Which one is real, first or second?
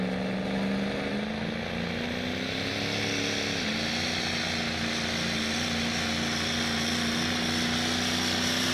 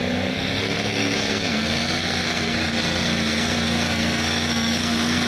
first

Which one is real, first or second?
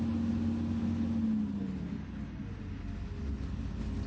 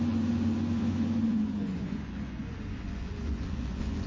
first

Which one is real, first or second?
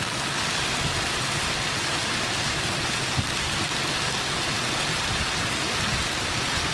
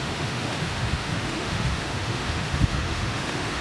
first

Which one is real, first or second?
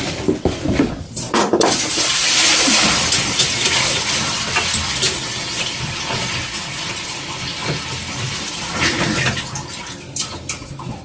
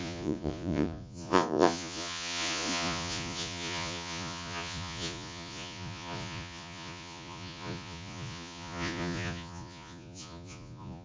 first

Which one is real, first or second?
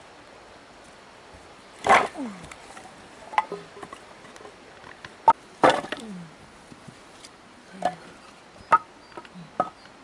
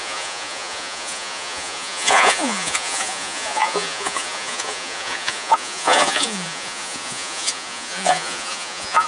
first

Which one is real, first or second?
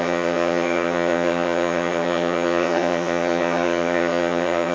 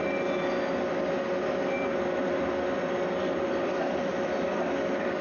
second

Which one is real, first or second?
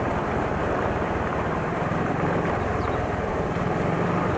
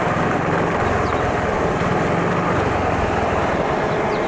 second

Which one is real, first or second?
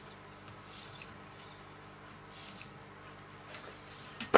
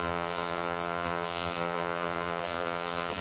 first